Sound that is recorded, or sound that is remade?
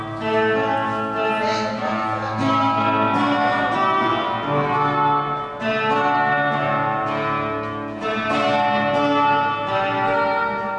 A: recorded